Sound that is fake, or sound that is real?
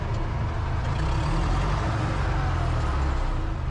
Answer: real